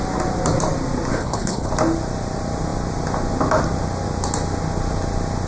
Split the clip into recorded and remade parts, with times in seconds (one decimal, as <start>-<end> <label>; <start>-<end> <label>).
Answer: 0.0-1.1 recorded; 1.1-1.7 remade; 1.7-5.5 recorded